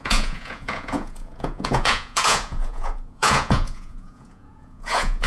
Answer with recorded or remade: remade